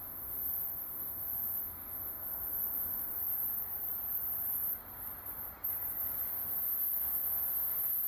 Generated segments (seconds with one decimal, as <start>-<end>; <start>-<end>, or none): 0.0-3.2; 6.3-8.1